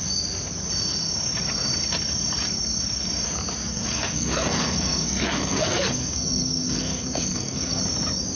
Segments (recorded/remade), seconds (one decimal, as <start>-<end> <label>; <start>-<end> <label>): 0.0-3.7 recorded; 3.7-7.8 remade; 7.8-8.4 recorded